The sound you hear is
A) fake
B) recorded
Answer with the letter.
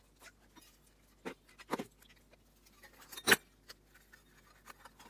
B